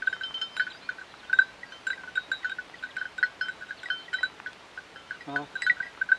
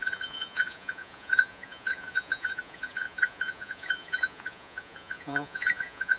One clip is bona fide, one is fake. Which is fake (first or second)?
second